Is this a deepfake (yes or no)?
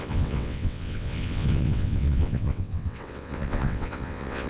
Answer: yes